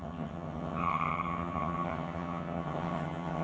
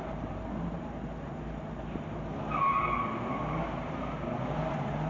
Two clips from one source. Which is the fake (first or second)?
first